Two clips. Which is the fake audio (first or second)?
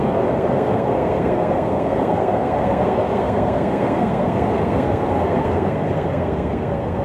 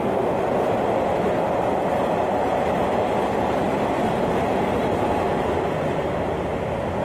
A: first